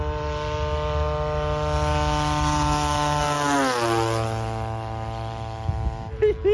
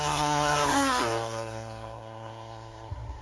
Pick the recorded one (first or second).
first